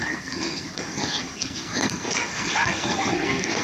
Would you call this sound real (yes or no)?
no